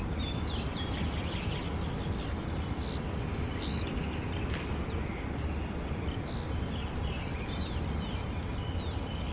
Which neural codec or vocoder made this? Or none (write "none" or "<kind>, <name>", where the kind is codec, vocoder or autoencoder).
none